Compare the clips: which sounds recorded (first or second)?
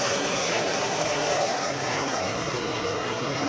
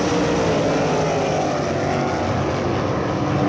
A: second